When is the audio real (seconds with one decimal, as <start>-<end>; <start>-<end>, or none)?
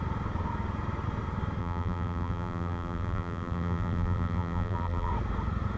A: 0.0-1.6; 5.1-5.8